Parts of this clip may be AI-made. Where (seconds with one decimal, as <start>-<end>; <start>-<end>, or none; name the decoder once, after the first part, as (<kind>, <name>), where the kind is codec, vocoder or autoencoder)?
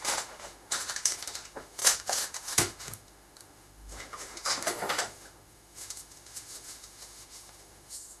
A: 0.0-8.2 (autoencoder, DAC-VAE)